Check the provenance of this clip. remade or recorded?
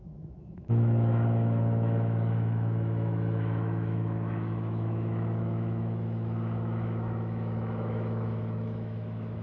remade